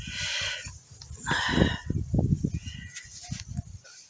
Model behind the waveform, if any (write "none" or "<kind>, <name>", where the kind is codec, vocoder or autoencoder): none